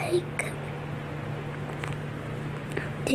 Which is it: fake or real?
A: real